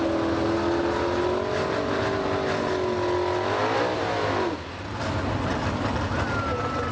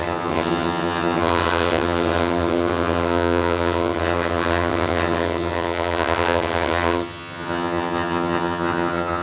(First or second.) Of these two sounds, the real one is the first